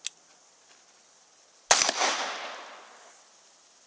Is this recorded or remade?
recorded